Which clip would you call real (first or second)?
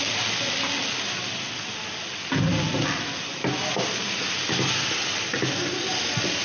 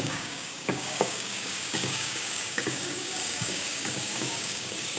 first